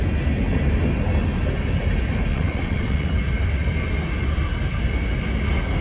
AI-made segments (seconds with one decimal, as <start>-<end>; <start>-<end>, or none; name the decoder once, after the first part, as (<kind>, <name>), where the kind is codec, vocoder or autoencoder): 2.3-3.1 (vocoder, WaveNeXt)